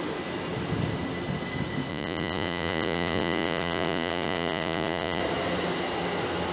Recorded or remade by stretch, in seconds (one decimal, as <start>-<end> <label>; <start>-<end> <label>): 0.0-1.9 recorded; 1.9-5.2 remade; 5.2-6.5 recorded